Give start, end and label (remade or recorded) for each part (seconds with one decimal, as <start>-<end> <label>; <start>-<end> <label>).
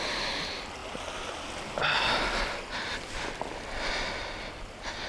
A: 0.0-5.1 recorded